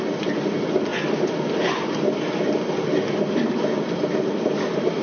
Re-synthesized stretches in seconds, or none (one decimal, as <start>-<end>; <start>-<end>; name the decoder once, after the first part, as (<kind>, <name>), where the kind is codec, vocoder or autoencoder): none